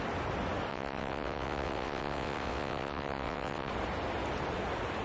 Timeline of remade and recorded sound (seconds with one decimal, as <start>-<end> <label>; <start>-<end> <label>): 0.0-0.7 recorded; 0.7-3.7 remade; 3.7-5.0 recorded

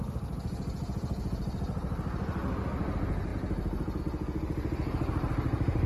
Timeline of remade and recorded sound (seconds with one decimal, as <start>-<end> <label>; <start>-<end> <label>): 0.0-5.9 recorded

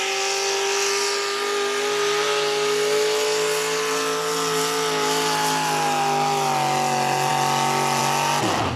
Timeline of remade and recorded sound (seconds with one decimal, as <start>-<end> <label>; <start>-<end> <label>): 0.0-8.8 recorded